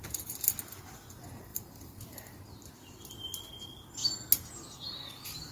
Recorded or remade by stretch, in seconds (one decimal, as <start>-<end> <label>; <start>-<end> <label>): 0.0-1.5 recorded; 1.5-2.4 remade; 2.4-5.5 recorded